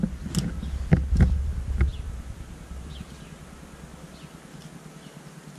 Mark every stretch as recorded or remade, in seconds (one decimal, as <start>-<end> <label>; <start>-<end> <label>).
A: 0.0-5.6 recorded